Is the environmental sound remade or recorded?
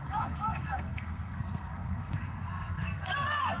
remade